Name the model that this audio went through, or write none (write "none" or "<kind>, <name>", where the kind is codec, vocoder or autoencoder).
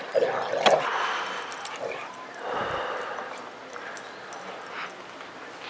none